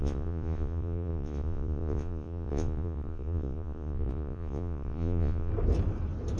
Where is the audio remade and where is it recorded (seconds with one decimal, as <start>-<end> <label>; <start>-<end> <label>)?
0.0-5.5 remade; 5.5-6.4 recorded